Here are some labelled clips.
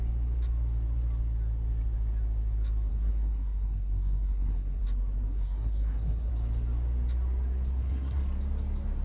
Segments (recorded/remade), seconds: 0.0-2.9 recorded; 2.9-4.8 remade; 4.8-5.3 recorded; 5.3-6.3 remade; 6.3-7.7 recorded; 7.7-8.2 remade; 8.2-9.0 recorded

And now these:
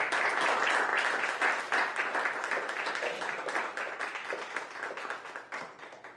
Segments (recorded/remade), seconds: 0.0-6.2 recorded

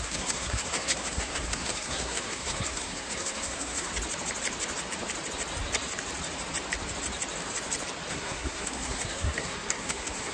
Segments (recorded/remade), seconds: 0.0-3.9 remade; 3.9-8.1 recorded; 8.1-10.3 remade

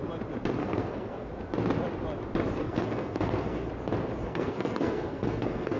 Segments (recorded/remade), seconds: 0.0-0.6 recorded; 0.6-1.3 remade; 1.3-2.6 recorded; 2.6-3.7 remade; 3.7-4.2 recorded; 4.2-5.8 remade